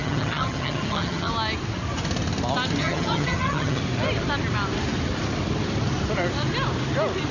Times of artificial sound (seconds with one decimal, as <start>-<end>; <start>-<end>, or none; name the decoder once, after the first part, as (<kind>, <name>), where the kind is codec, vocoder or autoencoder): 0.0-1.3 (vocoder, HiFi-GAN); 2.8-3.8